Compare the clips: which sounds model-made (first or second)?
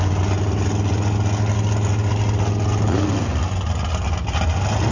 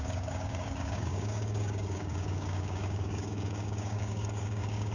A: second